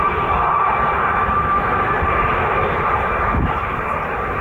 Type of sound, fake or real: fake